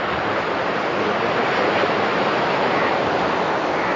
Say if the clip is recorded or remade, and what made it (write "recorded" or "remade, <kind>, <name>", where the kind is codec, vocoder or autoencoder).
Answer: recorded